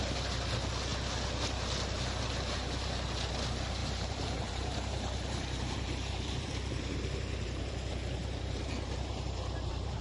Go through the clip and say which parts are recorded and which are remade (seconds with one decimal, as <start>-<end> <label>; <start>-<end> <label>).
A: 0.0-3.8 recorded; 3.8-7.7 remade; 7.7-8.2 recorded; 8.2-10.0 remade